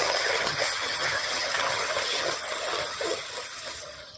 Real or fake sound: fake